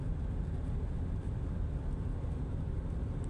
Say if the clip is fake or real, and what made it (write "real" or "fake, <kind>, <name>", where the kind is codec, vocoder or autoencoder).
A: real